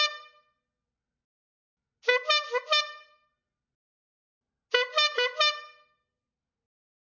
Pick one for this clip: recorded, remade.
recorded